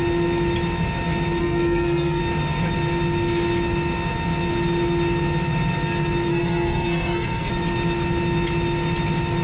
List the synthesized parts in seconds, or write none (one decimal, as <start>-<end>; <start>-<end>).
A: 1.4-2.2; 6.3-7.5